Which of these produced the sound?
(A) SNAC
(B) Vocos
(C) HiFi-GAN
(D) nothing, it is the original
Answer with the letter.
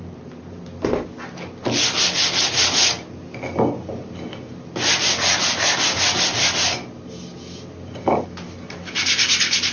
D